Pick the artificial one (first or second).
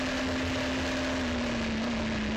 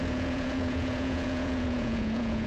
second